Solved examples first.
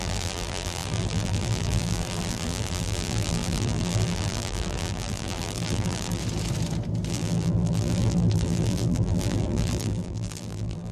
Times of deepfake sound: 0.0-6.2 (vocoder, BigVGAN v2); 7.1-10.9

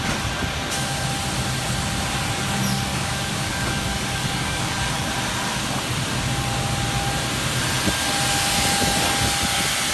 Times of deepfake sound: 2.9-5.1 (codec, DAC)

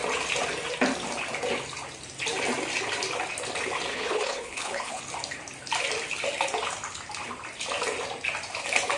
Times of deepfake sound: 3.9-5.0 (codec, HILCodec)

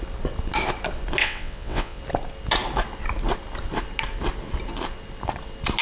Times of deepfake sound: 1.2-2.0 (vocoder, WaveNeXt)

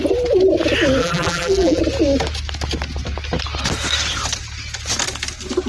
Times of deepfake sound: 1.0-1.8 (vocoder, BigVGAN v2)

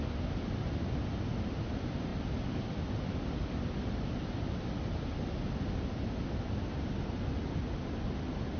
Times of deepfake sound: none

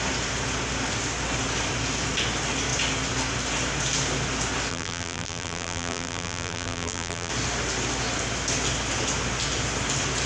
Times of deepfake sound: 4.7-7.3 (vocoder, BigVGAN v2)